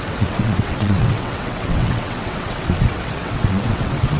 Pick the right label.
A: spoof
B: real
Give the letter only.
A